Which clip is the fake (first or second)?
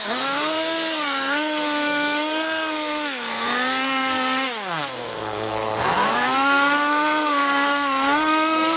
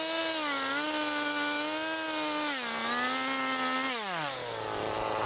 first